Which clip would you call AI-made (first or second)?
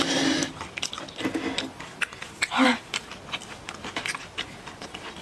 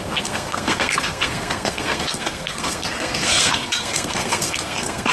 second